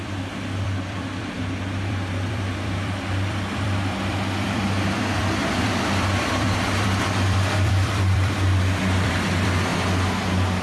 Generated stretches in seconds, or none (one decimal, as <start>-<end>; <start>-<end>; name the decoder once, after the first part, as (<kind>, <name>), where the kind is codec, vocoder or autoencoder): 0.0-9.7 (vocoder, BigVGAN v2)